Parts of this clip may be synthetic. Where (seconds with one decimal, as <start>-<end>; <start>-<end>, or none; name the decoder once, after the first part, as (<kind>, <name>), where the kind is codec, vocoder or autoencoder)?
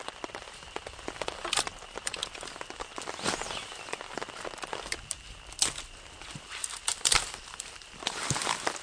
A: 0.0-2.2 (vocoder, BigVGAN v2); 7.4-8.8